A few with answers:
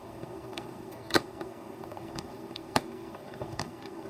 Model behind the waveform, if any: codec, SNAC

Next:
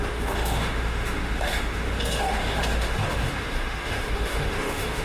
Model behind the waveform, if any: autoencoder, DAC-VAE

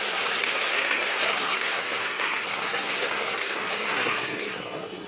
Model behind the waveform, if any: codec, SNAC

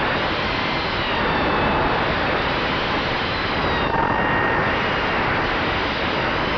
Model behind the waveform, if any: none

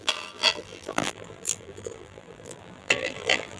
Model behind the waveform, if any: vocoder, BigVGAN v2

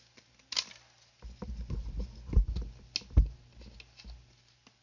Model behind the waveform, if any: none